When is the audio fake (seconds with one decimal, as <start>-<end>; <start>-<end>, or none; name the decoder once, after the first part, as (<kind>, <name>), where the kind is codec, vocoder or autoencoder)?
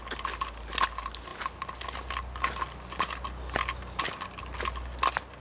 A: none